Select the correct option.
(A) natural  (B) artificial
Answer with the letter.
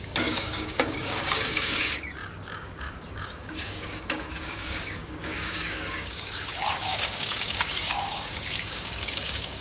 B